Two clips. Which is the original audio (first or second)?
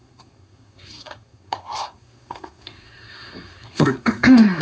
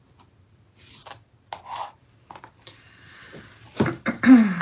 second